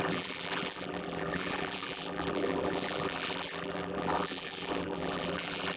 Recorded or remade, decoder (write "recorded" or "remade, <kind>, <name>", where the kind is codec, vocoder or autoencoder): remade, vocoder, BigVGAN v2